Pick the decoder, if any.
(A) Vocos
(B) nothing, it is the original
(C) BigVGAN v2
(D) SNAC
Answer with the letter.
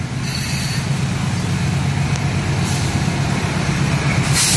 B